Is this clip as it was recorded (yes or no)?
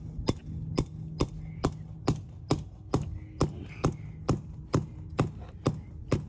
yes